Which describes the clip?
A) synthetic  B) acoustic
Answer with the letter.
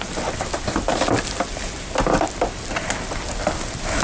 B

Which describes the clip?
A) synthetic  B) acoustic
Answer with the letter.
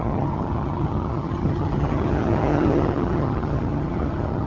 A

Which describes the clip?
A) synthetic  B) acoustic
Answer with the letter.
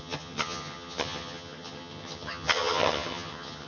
A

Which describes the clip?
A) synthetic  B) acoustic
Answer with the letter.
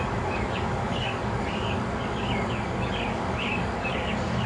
A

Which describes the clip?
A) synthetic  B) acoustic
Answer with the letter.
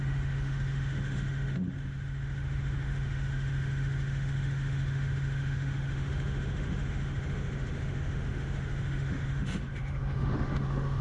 A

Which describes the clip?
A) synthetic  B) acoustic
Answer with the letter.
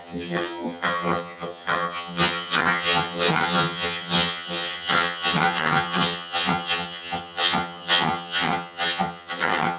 A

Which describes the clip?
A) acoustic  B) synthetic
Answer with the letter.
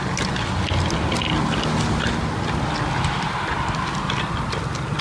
A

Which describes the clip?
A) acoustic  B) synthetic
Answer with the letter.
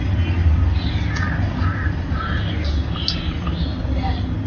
A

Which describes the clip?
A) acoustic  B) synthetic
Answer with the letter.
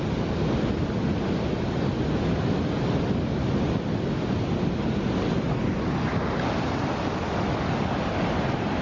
A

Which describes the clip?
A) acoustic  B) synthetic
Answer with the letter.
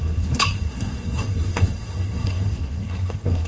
B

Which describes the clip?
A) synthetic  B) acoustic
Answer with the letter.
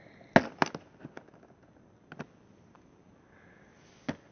B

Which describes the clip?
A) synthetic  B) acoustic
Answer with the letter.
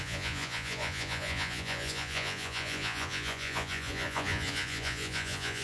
A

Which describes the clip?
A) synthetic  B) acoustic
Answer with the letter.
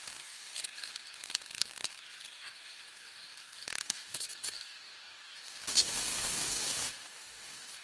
A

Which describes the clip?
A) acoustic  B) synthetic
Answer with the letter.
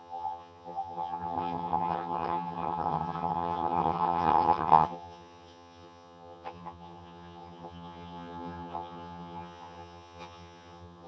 B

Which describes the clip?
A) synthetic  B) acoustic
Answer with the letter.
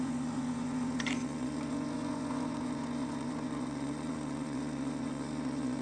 A